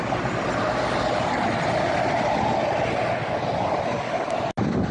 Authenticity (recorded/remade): recorded